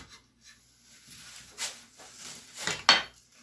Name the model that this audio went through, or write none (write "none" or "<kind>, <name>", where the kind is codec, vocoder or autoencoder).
none